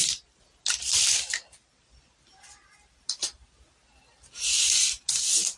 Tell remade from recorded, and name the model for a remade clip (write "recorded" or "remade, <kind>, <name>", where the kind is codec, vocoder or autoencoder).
recorded